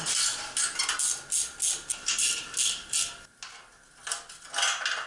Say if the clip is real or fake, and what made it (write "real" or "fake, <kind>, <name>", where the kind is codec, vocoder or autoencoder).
real